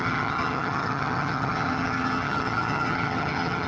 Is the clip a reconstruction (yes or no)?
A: yes